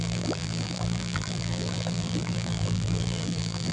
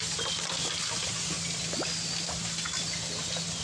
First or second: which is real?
second